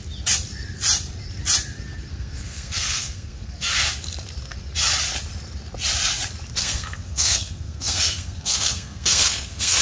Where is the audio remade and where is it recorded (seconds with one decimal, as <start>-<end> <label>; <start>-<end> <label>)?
0.0-2.1 recorded; 2.1-3.7 remade; 3.7-6.6 recorded; 6.6-9.8 remade